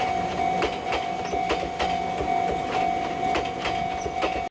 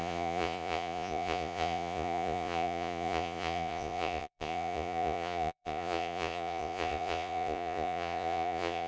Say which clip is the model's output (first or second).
second